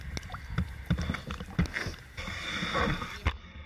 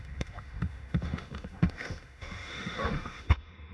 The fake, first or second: second